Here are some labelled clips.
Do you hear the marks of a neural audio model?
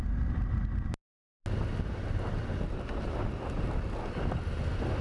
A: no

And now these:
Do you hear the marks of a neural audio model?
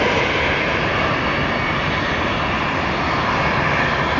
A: no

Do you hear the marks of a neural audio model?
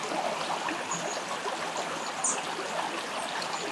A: no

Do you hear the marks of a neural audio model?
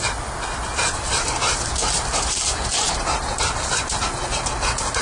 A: no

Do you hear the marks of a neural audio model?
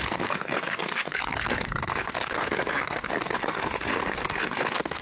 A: yes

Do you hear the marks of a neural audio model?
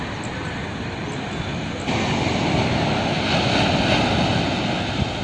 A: no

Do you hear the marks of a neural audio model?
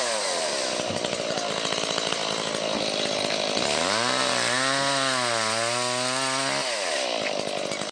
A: no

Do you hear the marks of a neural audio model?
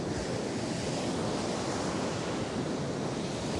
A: no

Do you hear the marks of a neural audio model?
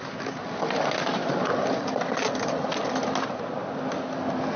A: no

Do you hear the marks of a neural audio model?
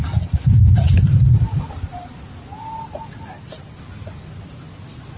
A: no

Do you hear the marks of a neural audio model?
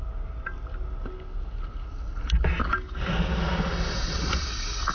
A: no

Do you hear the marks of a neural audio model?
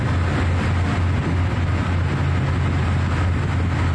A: no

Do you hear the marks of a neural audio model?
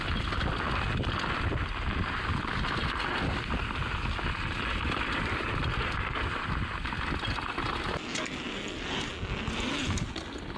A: no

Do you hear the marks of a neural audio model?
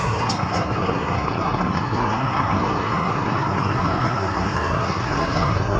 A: yes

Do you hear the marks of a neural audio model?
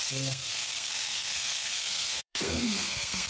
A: yes